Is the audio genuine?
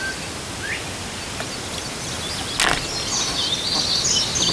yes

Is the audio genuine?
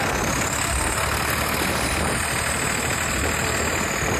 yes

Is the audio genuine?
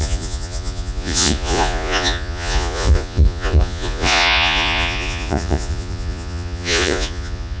no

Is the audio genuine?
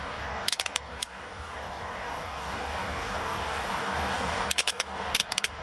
no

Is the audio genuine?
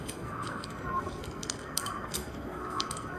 no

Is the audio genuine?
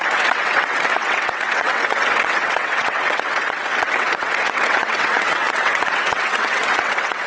no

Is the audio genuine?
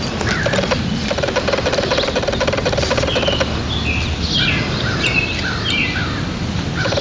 yes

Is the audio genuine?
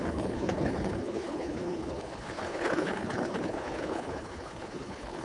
no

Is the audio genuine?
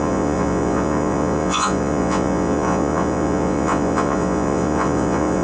no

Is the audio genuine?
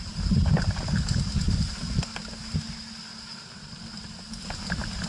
yes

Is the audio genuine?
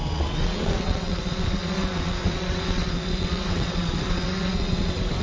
no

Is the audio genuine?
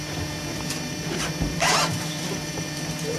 no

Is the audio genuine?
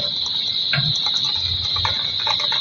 yes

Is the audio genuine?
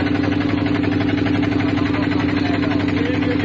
yes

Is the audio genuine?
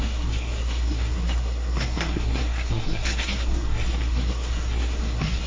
no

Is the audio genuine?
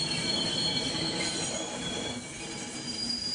no